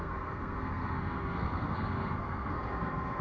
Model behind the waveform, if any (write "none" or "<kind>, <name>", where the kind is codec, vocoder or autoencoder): codec, SNAC